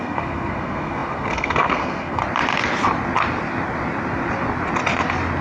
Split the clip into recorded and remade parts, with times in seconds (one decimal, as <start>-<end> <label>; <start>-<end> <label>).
0.0-2.2 remade; 2.2-5.4 recorded